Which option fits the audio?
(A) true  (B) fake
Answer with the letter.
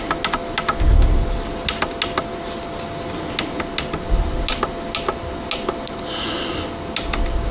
A